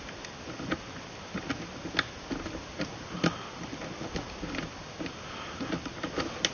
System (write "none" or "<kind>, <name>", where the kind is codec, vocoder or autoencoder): none